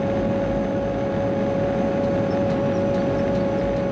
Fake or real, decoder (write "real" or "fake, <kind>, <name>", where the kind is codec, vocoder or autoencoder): real